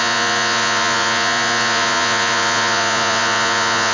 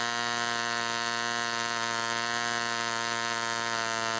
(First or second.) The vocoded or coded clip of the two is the first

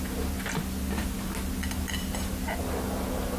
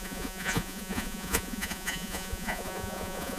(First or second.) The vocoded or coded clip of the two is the second